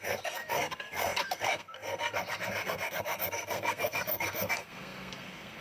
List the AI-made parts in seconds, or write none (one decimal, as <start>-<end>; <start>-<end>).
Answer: 0.0-5.6